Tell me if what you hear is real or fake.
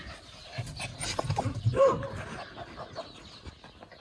real